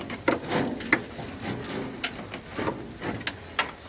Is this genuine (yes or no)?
yes